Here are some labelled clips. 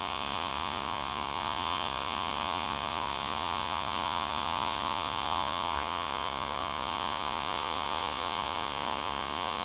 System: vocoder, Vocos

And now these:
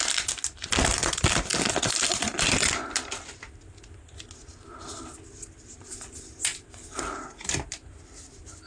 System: none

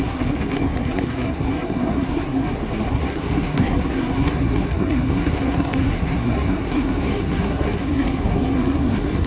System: codec, SNAC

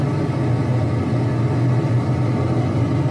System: none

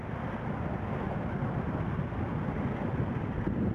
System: none